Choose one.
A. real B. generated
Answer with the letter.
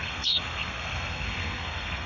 B